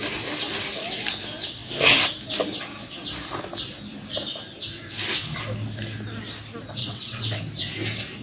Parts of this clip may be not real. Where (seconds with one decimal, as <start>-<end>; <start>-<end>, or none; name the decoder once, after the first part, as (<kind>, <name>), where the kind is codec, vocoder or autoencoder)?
6.8-7.4 (vocoder, WaveNeXt)